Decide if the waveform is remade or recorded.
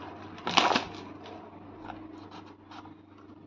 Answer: recorded